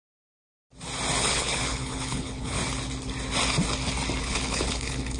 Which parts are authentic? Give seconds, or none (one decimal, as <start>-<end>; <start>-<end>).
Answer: 0.0-1.2; 2.6-4.2